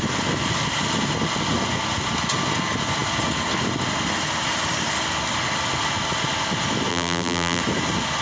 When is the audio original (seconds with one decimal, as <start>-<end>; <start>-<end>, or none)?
0.0-6.9; 7.6-8.2